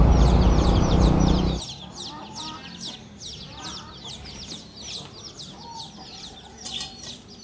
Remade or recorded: recorded